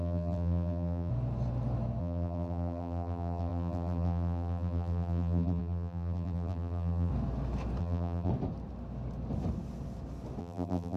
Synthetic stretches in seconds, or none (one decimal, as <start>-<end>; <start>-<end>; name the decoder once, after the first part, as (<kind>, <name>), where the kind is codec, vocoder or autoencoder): 0.0-1.1 (vocoder, BigVGAN v2); 2.0-7.1; 7.8-8.3; 10.4-11.0

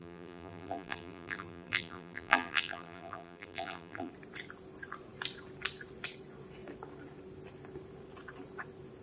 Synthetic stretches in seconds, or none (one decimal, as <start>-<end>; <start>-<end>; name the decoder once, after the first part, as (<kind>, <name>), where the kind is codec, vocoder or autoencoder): 0.0-4.1 (vocoder, BigVGAN v2)

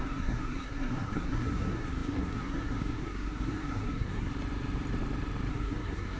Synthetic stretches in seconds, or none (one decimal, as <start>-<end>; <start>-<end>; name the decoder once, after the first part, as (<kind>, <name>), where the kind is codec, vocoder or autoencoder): 0.0-4.3 (codec, SNAC); 5.5-6.2

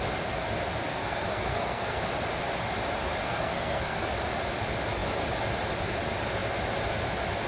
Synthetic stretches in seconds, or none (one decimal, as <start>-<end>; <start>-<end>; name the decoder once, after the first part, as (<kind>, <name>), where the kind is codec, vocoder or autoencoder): 0.9-2.0 (codec, SNAC); 3.2-4.1

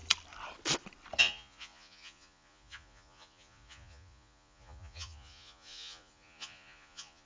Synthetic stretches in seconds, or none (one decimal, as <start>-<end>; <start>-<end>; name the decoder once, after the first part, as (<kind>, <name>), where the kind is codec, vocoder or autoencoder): 1.2-7.3 (vocoder, Vocos)

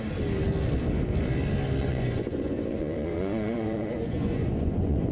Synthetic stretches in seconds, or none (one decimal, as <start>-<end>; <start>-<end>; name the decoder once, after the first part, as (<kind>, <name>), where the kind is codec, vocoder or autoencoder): 1.8-5.1 (vocoder, Vocos)